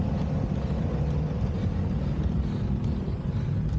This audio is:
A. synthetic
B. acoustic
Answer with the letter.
B